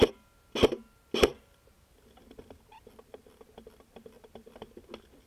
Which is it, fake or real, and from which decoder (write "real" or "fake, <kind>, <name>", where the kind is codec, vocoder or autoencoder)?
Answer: real